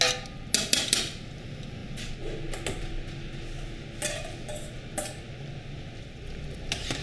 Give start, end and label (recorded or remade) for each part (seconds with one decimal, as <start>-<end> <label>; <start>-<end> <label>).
0.0-7.0 recorded